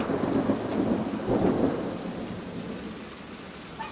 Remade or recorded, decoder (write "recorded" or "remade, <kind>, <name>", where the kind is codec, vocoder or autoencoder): recorded